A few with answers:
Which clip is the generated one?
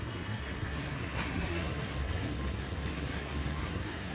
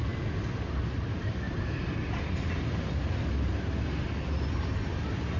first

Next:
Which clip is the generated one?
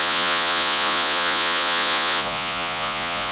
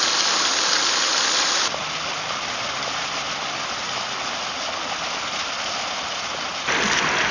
first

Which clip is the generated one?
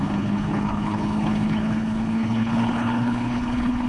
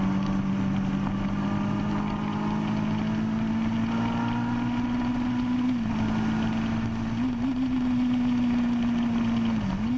first